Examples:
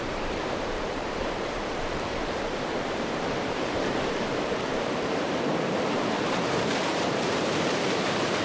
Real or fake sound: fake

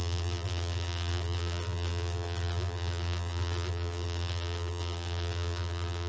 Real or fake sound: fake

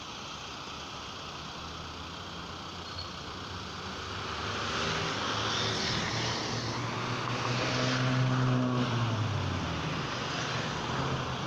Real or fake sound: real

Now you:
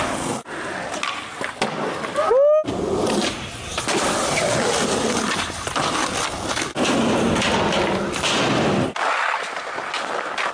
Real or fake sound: real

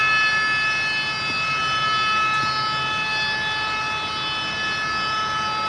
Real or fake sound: real